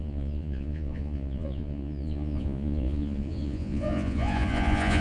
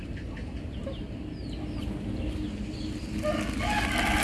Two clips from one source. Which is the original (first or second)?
second